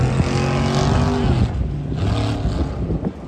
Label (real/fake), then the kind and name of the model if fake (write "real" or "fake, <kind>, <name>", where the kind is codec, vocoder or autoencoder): real